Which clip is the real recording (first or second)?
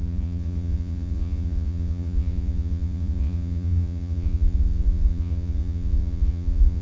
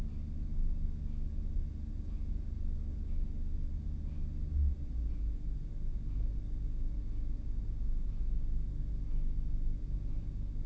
second